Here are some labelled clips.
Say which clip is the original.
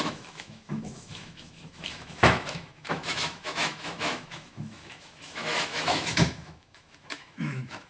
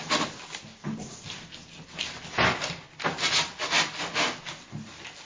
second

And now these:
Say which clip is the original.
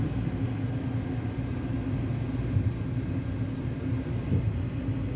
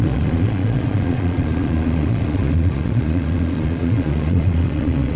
first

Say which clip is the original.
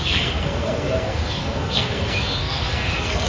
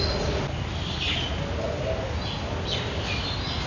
second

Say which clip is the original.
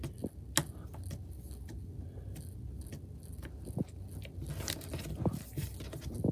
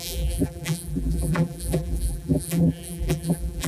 first